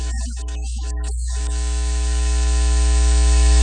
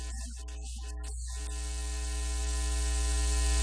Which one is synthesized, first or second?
first